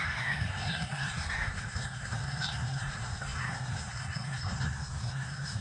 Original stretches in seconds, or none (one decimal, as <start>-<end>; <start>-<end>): none